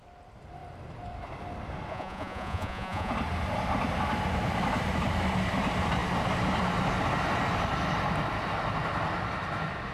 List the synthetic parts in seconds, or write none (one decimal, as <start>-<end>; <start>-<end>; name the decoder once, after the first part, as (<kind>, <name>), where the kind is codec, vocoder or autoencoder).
1.9-3.1 (vocoder, Vocos)